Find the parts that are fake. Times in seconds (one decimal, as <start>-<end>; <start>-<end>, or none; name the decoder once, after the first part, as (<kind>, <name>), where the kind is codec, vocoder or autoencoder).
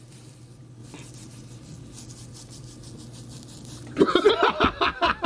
none